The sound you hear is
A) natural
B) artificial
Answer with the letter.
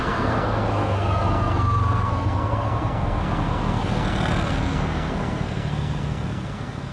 B